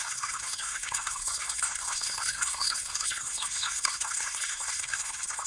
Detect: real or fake fake